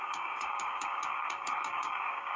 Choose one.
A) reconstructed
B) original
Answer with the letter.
A